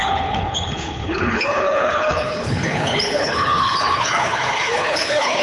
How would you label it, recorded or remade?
remade